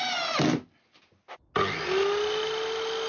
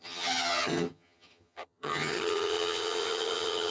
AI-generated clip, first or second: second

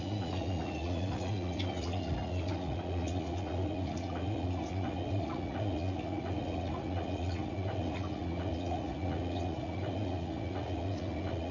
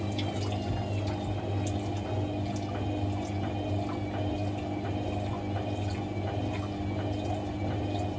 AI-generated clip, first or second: first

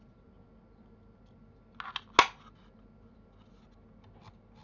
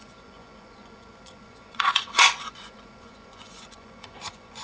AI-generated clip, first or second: second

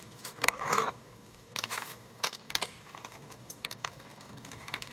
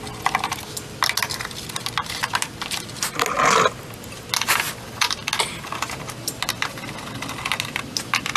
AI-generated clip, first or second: first